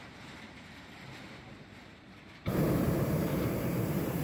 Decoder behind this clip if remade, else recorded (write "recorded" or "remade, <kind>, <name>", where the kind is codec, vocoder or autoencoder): remade, vocoder, BigVGAN v2